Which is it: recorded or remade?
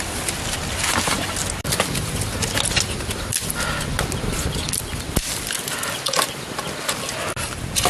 recorded